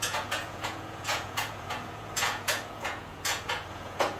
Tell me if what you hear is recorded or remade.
remade